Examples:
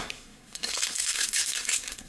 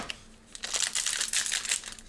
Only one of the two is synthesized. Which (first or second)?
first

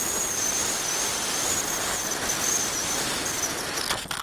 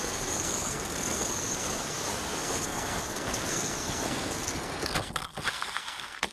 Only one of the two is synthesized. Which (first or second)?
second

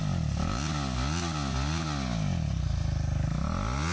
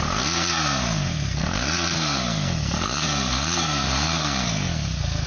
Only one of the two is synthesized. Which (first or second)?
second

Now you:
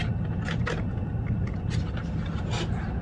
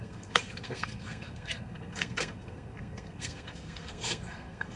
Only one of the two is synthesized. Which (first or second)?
second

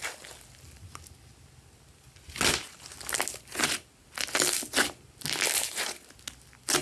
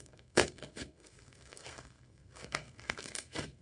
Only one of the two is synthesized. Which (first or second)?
second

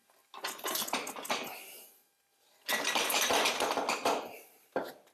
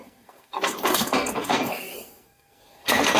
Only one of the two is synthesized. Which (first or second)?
second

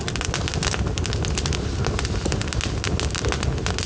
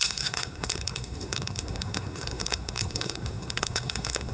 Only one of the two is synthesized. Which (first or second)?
second